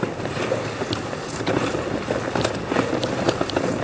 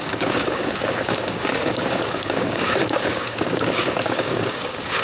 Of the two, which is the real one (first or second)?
first